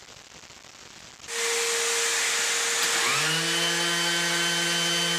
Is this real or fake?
real